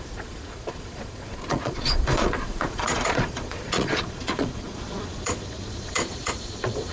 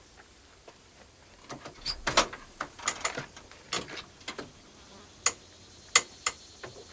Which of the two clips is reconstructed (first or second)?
first